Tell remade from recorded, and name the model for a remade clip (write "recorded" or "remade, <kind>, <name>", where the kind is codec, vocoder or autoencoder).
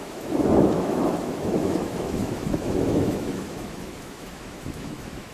remade, autoencoder, DAC-VAE